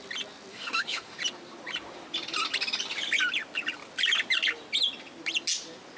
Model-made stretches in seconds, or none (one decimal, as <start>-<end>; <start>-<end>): 0.5-1.2